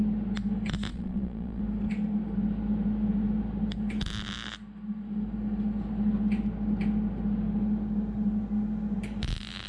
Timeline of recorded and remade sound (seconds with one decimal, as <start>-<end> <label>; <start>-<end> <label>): 0.0-0.9 recorded; 0.9-1.6 remade; 1.6-9.7 recorded